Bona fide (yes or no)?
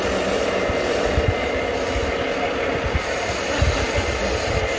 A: yes